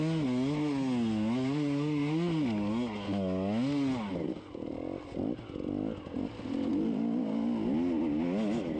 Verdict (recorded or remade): recorded